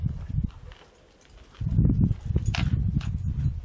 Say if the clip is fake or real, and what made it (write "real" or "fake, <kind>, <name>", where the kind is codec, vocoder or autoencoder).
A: real